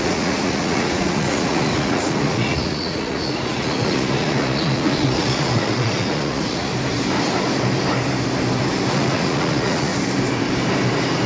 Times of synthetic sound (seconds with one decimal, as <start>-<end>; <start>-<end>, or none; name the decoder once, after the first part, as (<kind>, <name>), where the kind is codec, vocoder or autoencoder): 0.0-6.7 (vocoder, Vocos); 8.9-9.9